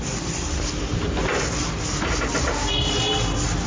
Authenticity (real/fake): real